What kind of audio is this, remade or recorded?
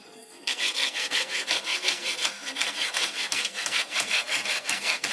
remade